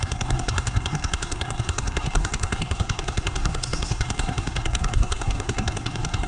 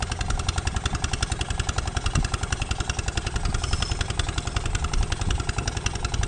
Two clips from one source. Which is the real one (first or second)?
second